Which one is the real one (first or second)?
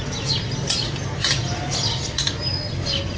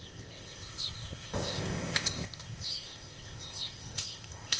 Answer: first